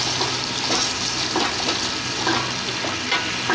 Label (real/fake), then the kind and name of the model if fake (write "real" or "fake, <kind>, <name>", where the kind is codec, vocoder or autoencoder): real